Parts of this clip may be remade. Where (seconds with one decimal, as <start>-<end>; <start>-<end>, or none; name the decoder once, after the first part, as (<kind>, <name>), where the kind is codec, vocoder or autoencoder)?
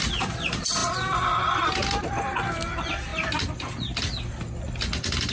none